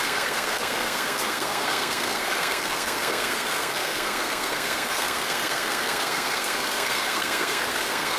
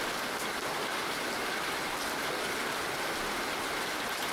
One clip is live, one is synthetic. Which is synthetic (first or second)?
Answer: first